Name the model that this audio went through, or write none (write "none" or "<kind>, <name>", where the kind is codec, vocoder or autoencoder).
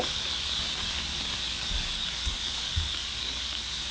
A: codec, DAC